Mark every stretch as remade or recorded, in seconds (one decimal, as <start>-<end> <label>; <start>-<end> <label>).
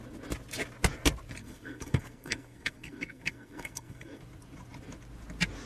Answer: 0.0-1.4 recorded; 1.4-4.2 remade; 4.2-5.7 recorded